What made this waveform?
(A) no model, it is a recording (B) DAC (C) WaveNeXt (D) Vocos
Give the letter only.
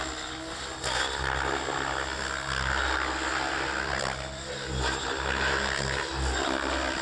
A